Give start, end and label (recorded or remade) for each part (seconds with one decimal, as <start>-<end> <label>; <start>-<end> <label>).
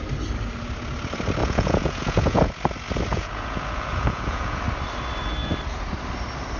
0.0-1.4 recorded; 1.4-2.5 remade; 2.5-3.1 recorded; 3.1-4.6 remade; 4.6-6.6 recorded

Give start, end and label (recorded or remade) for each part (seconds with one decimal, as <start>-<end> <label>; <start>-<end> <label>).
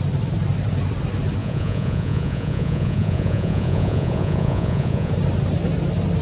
0.0-1.4 recorded; 1.4-5.1 remade; 5.1-6.2 recorded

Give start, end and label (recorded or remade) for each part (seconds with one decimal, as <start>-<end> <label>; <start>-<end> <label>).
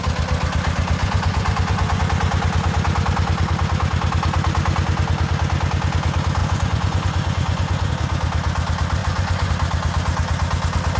0.0-1.0 recorded; 1.0-2.0 remade; 2.0-6.4 recorded; 6.4-7.9 remade; 7.9-9.0 recorded; 9.0-9.5 remade; 9.5-11.0 recorded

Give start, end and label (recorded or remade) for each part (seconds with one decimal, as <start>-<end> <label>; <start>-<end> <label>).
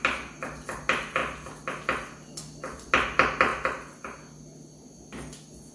0.0-5.7 recorded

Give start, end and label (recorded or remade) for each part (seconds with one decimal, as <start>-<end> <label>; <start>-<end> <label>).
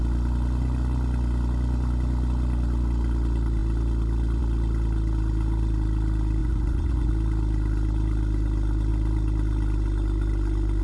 0.0-6.4 recorded; 6.4-7.1 remade; 7.1-10.8 recorded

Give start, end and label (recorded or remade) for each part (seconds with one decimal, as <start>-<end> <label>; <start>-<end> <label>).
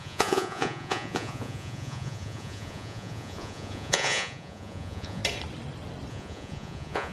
0.0-5.2 remade; 5.2-6.1 recorded; 6.1-7.1 remade